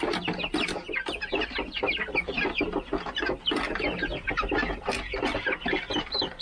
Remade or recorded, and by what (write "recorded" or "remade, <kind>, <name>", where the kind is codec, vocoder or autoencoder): recorded